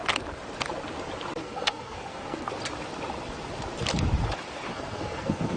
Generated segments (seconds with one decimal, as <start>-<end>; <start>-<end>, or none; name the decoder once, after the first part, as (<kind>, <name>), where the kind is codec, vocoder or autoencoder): 1.4-2.5 (codec, SNAC); 4.7-5.6